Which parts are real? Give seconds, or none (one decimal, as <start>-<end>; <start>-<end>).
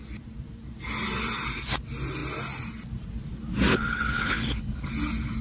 0.0-3.7; 4.9-5.4